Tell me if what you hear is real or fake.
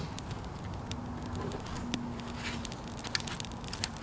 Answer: real